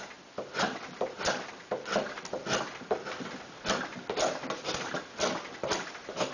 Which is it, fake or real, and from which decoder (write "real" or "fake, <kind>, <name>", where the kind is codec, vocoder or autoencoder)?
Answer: real